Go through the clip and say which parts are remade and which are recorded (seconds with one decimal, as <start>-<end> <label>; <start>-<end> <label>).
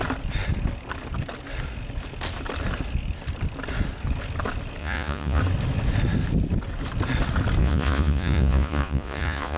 0.0-4.8 recorded; 4.8-5.4 remade; 5.4-7.6 recorded; 7.6-9.6 remade